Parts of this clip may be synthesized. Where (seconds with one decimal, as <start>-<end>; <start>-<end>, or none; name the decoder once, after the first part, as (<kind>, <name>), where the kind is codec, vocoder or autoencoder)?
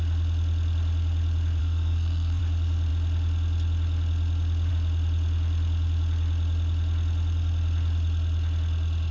1.6-2.4 (codec, SNAC)